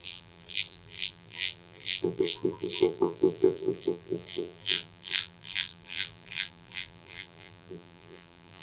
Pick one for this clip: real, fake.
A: fake